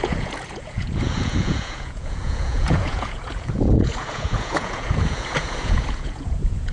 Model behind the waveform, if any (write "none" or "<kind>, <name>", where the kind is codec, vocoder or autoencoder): vocoder, Vocos